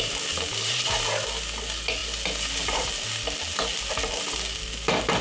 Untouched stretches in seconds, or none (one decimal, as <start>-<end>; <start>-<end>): 0.0-5.2

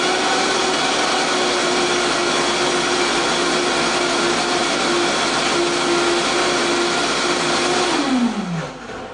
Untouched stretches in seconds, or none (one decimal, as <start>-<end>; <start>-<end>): 0.0-9.1

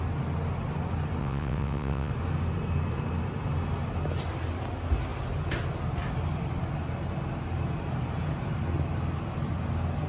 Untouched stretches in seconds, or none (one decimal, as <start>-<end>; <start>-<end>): 0.0-1.2; 2.1-10.1

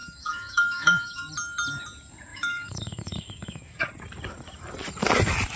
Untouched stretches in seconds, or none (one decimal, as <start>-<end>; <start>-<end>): 1.3-2.3; 3.8-5.6

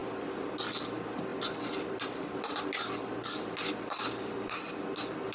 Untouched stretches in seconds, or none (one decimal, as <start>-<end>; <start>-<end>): 0.0-5.3

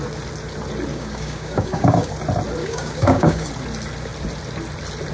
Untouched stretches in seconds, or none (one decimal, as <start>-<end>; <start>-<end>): 0.0-0.9; 2.1-2.6; 3.5-5.1

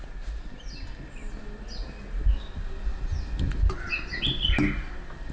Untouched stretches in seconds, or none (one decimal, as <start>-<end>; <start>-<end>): 0.0-5.3

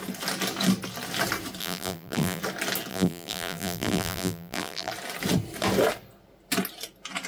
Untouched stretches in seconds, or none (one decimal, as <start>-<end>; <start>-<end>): 0.0-1.6; 2.4-2.9; 4.9-7.3